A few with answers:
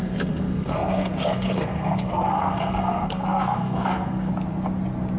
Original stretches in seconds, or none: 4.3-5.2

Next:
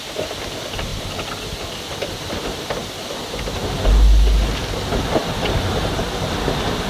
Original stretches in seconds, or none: 0.0-6.9

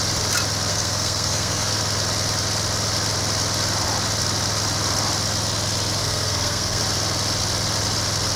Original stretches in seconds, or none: 0.0-0.7; 1.8-6.0; 6.8-8.4

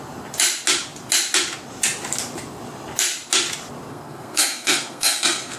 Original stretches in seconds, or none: 0.0-3.9

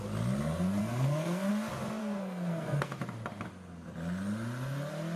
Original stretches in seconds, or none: 0.0-0.8; 1.5-2.0; 3.0-5.2

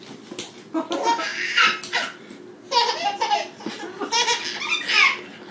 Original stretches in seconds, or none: 0.0-5.5